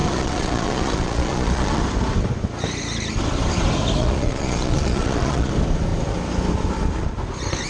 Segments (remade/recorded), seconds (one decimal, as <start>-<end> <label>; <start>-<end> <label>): 0.0-1.8 remade; 1.8-4.0 recorded; 4.0-5.5 remade; 5.5-7.7 recorded